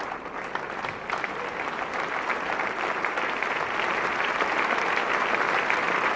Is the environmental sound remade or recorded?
recorded